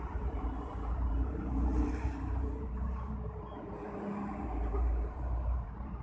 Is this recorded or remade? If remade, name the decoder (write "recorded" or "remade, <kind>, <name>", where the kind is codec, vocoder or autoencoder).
remade, vocoder, BigVGAN v2